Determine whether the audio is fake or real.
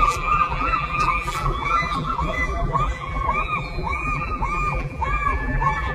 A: fake